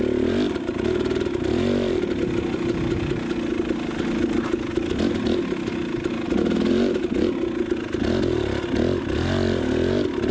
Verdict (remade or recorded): recorded